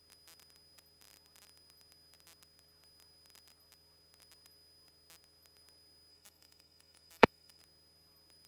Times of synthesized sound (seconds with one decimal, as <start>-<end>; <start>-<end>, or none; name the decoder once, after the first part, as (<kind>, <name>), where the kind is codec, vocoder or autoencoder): 6.1-7.6 (autoencoder, DAC-VAE)